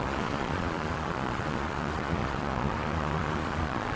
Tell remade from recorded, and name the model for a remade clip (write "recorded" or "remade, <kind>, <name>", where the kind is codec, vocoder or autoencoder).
remade, vocoder, Vocos